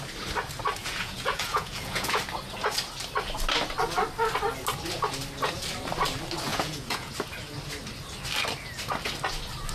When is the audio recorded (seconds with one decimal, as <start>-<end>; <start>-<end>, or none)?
0.0-0.8; 2.2-6.5; 7.1-9.7